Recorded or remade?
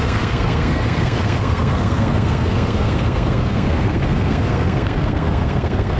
remade